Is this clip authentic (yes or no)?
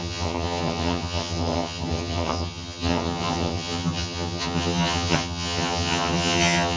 no